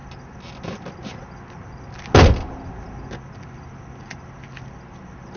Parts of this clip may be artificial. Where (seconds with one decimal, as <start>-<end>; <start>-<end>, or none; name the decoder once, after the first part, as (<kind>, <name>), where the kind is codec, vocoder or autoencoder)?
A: none